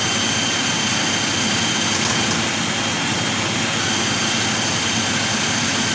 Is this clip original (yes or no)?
yes